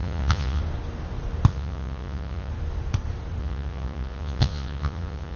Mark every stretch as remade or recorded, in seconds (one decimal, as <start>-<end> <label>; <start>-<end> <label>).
0.0-0.6 remade; 0.6-1.5 recorded; 1.5-2.5 remade; 2.5-3.4 recorded; 3.4-5.4 remade